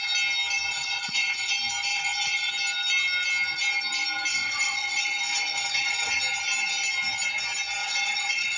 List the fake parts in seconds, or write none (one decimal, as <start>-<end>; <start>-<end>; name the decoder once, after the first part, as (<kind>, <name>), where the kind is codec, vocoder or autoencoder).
0.7-1.5 (vocoder, WaveNeXt); 1.9-2.5; 4.3-6.2; 7.8-8.6